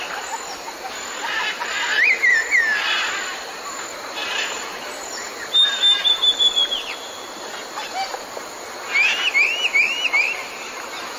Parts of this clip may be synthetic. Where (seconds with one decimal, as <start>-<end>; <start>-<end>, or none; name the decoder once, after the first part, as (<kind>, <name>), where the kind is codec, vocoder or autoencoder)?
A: 9.7-10.4 (vocoder, BigVGAN v2)